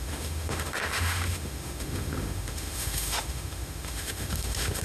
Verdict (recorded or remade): remade